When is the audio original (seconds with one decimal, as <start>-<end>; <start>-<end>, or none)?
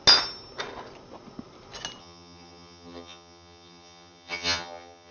0.0-2.0